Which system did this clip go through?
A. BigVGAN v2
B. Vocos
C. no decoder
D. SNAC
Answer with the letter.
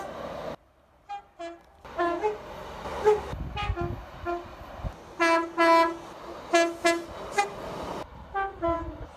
C